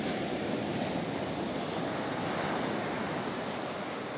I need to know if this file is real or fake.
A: real